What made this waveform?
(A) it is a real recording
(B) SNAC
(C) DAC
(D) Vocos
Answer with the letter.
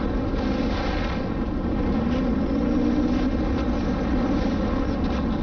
A